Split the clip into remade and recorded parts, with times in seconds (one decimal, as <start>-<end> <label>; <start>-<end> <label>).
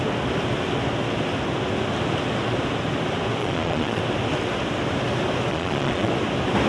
0.0-3.4 recorded; 3.4-4.0 remade; 4.0-5.5 recorded; 5.5-6.1 remade; 6.1-6.7 recorded